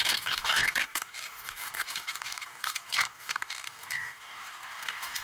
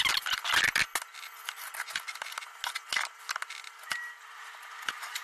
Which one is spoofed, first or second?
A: first